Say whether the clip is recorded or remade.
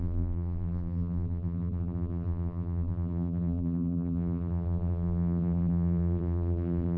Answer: remade